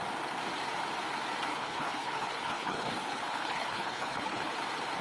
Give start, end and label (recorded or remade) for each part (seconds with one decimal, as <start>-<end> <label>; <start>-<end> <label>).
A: 0.0-1.5 recorded; 1.5-4.5 remade; 4.5-5.0 recorded